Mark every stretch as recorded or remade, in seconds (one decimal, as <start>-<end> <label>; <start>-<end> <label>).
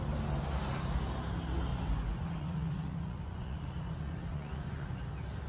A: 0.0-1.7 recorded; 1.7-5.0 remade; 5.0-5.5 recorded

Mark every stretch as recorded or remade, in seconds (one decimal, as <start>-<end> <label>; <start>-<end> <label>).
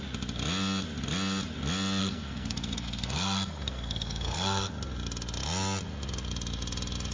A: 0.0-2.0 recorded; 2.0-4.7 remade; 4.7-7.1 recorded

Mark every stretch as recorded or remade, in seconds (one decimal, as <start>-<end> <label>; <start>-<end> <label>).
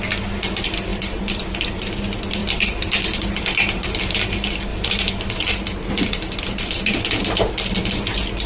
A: 0.0-0.9 recorded; 0.9-1.7 remade; 1.7-2.4 recorded; 2.4-4.2 remade; 4.2-4.7 recorded; 4.7-7.5 remade; 7.5-8.5 recorded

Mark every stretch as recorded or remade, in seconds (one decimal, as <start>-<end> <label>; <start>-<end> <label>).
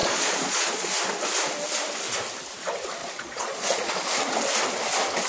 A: 0.0-0.9 remade; 0.9-3.0 recorded; 3.0-3.9 remade; 3.9-5.3 recorded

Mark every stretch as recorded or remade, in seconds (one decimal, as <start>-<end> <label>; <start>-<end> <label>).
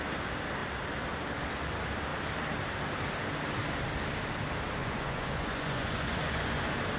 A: 0.0-4.8 recorded; 4.8-6.6 remade; 6.6-7.0 recorded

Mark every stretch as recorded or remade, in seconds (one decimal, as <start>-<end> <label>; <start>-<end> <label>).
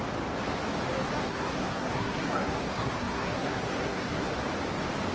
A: 0.0-1.2 recorded; 1.2-4.3 remade; 4.3-5.1 recorded